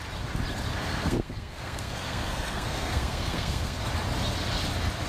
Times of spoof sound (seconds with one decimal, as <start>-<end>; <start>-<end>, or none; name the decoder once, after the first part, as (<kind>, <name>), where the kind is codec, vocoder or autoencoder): 0.7-3.8 (codec, SNAC)

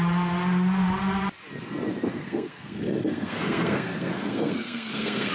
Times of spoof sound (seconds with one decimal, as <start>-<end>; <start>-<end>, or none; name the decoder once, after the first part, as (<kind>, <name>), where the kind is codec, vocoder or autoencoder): 2.1-5.3 (codec, SNAC)